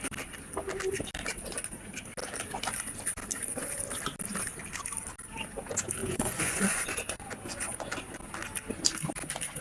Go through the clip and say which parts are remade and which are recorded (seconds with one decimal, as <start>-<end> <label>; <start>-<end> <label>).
0.0-6.0 recorded; 6.0-8.2 remade; 8.2-9.6 recorded